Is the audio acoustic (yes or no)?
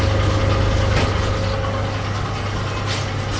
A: yes